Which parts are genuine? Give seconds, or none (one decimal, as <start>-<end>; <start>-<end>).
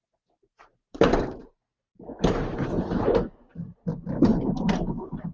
0.0-0.7; 3.9-4.3